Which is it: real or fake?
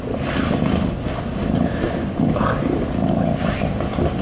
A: real